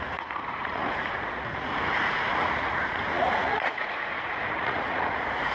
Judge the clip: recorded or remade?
remade